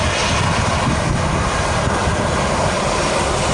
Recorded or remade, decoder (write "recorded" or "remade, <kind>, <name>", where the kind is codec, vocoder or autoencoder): recorded